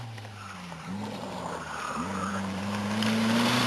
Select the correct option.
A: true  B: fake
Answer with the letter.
B